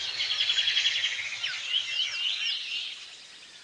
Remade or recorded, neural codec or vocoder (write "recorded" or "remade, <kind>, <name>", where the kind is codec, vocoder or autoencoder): recorded